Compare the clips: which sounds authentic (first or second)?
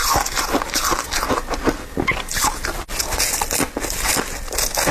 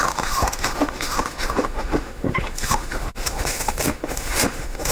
first